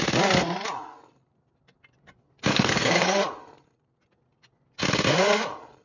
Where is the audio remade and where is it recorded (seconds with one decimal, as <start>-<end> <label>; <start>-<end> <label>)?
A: 0.0-2.5 recorded; 2.5-3.2 remade; 3.2-5.8 recorded